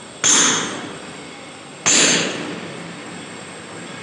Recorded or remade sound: recorded